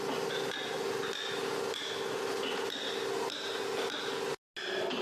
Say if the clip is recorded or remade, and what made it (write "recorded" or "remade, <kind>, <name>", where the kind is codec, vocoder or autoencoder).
recorded